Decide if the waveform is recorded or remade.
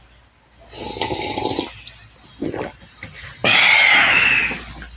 recorded